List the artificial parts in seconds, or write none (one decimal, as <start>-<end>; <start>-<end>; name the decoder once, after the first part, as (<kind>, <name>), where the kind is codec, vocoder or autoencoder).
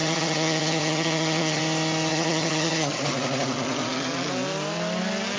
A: 0.0-1.6 (vocoder, HiFi-GAN); 2.1-3.0